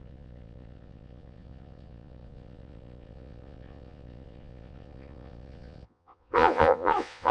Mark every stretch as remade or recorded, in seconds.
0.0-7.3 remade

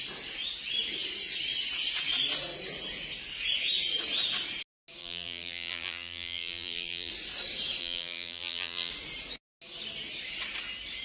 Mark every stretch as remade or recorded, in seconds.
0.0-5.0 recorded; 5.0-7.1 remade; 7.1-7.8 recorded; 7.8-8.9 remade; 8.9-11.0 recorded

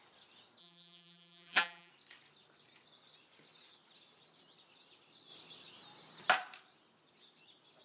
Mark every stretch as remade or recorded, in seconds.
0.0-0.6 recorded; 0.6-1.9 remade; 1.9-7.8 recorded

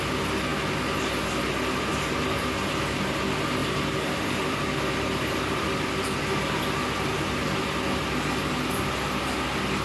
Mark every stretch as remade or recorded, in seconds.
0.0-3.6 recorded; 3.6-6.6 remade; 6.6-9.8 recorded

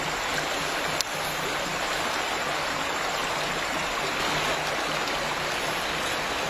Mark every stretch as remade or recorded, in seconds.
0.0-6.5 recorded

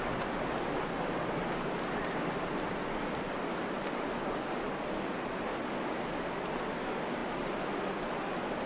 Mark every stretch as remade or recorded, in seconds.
0.0-8.7 recorded

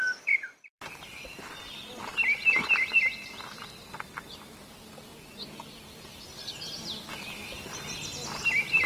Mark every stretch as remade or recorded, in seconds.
0.0-5.1 remade; 5.1-6.0 recorded; 6.0-8.9 remade

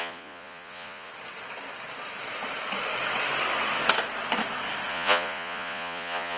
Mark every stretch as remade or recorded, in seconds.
0.0-1.1 remade; 1.1-4.9 recorded; 4.9-6.4 remade